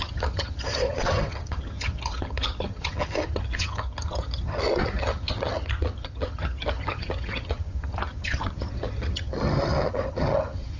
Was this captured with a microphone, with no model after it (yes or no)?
no